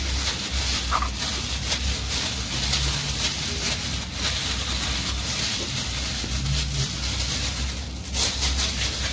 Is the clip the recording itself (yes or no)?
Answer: yes